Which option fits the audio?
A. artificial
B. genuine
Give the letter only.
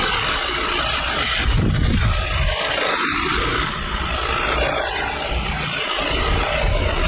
B